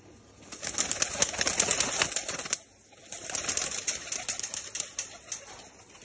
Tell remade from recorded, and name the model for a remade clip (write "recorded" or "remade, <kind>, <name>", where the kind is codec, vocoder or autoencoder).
recorded